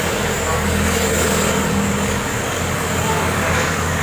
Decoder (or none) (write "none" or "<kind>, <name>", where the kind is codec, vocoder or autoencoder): codec, DAC